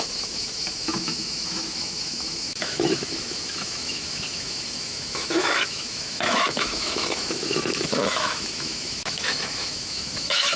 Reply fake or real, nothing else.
fake